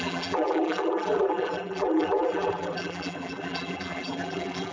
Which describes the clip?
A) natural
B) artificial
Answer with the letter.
B